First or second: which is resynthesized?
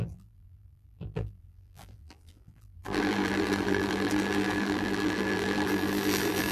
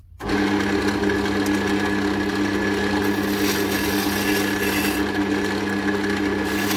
first